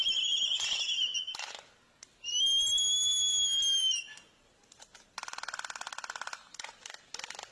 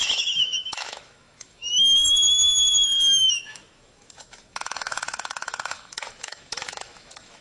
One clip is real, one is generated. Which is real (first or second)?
first